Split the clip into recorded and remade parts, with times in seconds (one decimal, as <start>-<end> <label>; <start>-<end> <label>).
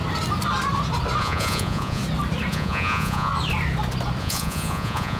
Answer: 0.0-1.2 recorded; 1.2-2.0 remade; 2.0-2.5 recorded; 2.5-3.3 remade; 3.3-4.2 recorded; 4.2-5.2 remade